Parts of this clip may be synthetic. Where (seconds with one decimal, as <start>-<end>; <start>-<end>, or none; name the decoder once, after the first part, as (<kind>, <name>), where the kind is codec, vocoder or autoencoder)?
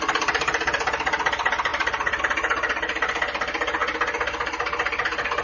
1.7-2.2 (vocoder, BigVGAN v2)